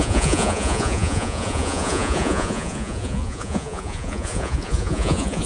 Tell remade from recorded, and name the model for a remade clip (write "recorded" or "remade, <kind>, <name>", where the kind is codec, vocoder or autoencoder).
remade, vocoder, Vocos